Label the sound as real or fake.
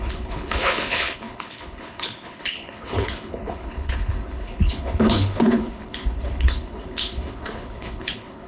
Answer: fake